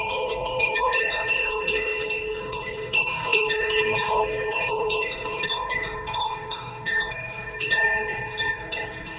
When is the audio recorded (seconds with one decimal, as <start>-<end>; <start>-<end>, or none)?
none